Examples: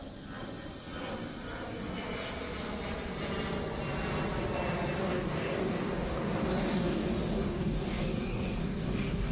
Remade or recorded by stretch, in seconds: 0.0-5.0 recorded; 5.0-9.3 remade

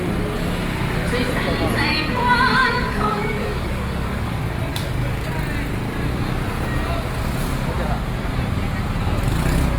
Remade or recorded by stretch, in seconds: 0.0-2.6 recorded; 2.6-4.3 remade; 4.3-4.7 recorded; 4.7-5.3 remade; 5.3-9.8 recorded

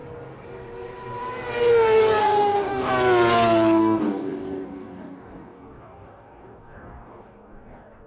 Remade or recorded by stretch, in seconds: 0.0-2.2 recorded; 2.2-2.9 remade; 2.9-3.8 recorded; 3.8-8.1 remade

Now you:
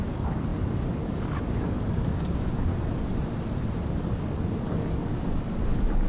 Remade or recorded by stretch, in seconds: 0.0-2.7 remade; 2.7-4.0 recorded; 4.0-6.1 remade

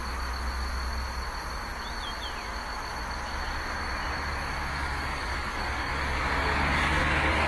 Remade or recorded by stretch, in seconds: 0.0-4.7 recorded; 4.7-7.5 remade

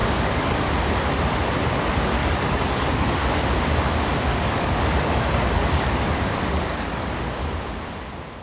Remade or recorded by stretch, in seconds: 0.0-0.7 remade; 0.7-2.2 recorded; 2.2-3.5 remade; 3.5-4.3 recorded; 4.3-7.1 remade; 7.1-8.4 recorded

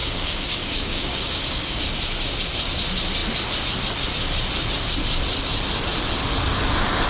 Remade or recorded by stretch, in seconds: 0.0-1.8 remade; 1.8-7.1 recorded